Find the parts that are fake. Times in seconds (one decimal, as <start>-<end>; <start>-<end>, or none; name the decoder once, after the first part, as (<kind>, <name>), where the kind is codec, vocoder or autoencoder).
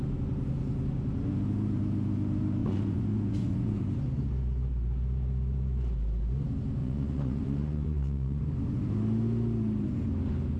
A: 2.6-3.8 (vocoder, Vocos); 6.8-8.4